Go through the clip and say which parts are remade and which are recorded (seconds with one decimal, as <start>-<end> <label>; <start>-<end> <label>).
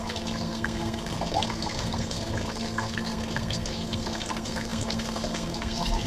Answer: 0.0-6.1 remade